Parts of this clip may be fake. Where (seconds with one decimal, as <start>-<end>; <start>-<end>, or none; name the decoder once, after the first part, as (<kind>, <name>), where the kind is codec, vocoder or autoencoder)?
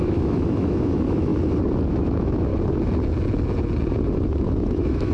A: 0.0-1.3 (autoencoder, DAC-VAE); 1.9-2.5; 4.4-5.1